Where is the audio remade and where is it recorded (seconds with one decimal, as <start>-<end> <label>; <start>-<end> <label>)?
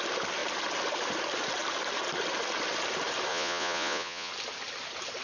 0.0-3.3 recorded; 3.3-4.3 remade; 4.3-5.2 recorded